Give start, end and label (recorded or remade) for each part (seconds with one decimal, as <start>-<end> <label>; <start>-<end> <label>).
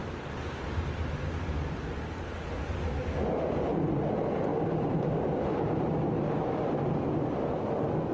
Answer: 0.0-1.9 remade; 1.9-4.5 recorded; 4.5-7.3 remade; 7.3-8.1 recorded